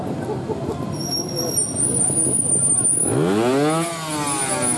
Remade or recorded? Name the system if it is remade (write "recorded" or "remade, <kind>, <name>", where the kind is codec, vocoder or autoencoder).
recorded